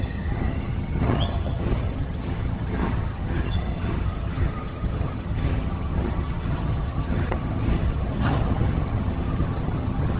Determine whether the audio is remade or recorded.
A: remade